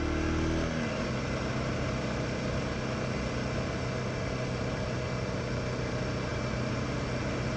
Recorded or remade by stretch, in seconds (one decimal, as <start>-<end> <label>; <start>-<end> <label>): 0.0-6.3 recorded; 6.3-7.0 remade; 7.0-7.6 recorded